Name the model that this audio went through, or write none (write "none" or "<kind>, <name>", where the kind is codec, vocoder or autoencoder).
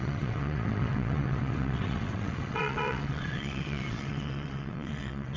vocoder, WaveNeXt